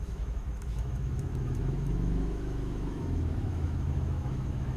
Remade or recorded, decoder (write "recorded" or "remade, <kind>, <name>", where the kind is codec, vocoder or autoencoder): remade, autoencoder, DAC-VAE